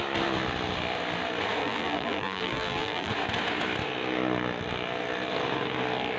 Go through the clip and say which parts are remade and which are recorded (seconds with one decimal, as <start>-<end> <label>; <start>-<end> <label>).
0.0-1.6 recorded; 1.6-3.1 remade; 3.1-6.2 recorded